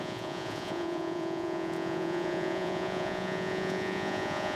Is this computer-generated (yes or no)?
yes